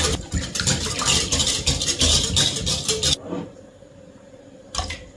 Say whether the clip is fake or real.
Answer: real